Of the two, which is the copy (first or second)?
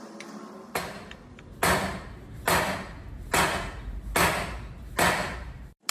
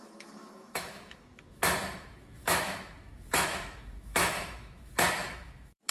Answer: second